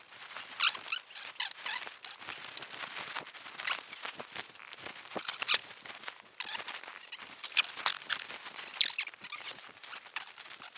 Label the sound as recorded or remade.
recorded